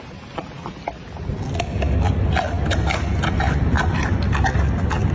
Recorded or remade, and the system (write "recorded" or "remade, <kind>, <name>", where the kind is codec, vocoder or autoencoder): recorded